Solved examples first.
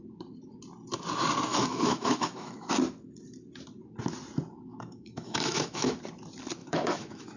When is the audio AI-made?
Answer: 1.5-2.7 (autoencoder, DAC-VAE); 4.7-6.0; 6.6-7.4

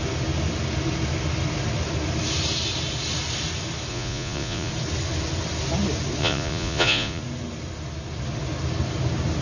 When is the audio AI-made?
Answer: 3.9-4.7 (vocoder, Vocos); 6.2-7.2

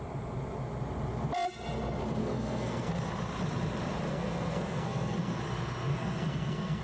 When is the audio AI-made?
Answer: 2.2-2.9 (codec, SNAC); 4.1-5.4; 5.9-6.8